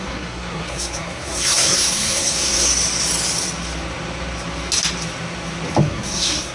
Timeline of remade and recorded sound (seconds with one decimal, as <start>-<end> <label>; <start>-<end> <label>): 0.0-2.7 remade; 2.7-5.8 recorded; 5.8-6.5 remade